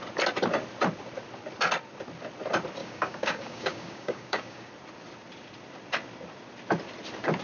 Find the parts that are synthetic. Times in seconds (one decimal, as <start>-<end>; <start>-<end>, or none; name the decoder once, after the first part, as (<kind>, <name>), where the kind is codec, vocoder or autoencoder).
2.8-4.7 (codec, DAC)